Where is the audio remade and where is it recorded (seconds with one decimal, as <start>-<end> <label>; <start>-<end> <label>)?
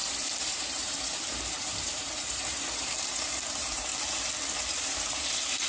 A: 0.0-3.9 remade; 3.9-4.6 recorded; 4.6-5.7 remade